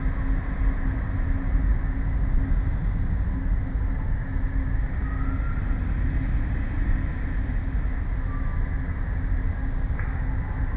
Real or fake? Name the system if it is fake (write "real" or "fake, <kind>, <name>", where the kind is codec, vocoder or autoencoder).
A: real